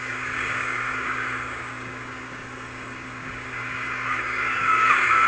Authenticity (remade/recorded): remade